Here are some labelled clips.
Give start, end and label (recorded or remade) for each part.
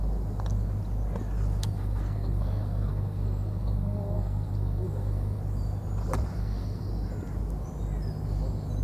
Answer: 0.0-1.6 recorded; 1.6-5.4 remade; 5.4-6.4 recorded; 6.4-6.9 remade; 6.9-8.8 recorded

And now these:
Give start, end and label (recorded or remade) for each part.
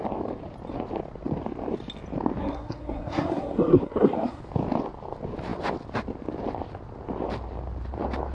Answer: 0.0-2.4 recorded; 2.4-4.4 remade; 4.4-8.3 recorded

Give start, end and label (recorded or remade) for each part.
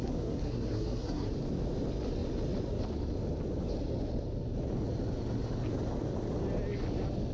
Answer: 0.0-1.3 remade; 1.3-7.3 recorded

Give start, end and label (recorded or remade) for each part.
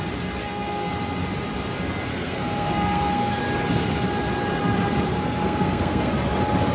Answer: 0.0-0.4 recorded; 0.4-0.9 remade; 0.9-2.1 recorded; 2.1-3.4 remade; 3.4-5.2 recorded; 5.2-6.1 remade; 6.1-6.7 recorded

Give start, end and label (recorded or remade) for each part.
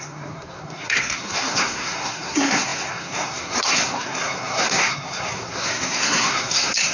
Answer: 0.0-6.9 remade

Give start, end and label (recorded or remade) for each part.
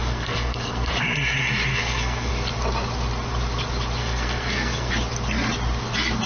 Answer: 0.0-0.9 remade; 0.9-1.7 recorded; 1.7-2.3 remade; 2.3-4.0 recorded; 4.0-4.9 remade; 4.9-6.3 recorded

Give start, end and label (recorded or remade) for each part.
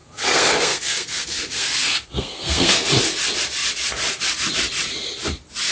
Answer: 0.0-2.9 remade; 2.9-5.7 recorded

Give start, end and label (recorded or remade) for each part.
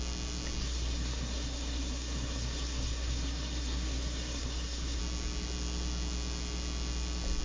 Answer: 0.0-0.6 recorded; 0.6-5.0 remade; 5.0-7.4 recorded